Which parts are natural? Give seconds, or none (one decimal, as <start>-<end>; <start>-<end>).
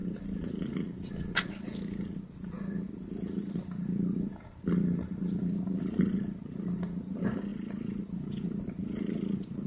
0.0-9.7